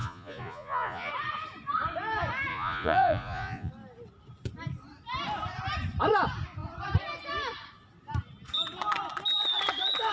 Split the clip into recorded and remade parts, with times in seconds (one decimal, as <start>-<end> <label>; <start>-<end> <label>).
0.0-1.1 remade; 1.1-2.5 recorded; 2.5-3.7 remade; 3.7-10.1 recorded